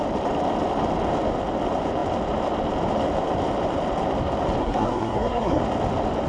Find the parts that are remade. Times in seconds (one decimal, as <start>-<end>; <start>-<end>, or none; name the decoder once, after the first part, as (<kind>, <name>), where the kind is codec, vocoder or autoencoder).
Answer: 4.6-5.6 (codec, SNAC)